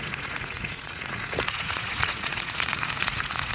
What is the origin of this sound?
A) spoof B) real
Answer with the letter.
A